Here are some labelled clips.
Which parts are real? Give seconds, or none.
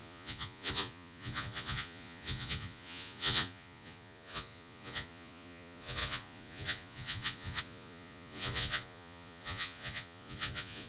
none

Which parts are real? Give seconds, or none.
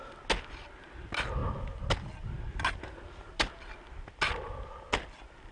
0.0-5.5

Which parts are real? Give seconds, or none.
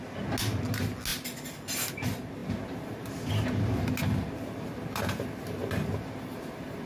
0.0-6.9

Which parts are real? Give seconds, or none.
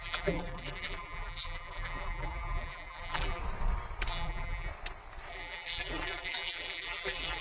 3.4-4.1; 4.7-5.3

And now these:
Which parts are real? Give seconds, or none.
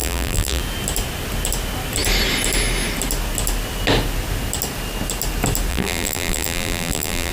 0.6-5.7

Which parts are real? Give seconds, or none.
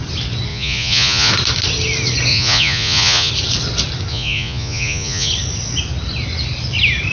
0.0-0.5; 1.3-2.3; 3.3-4.1; 5.3-7.1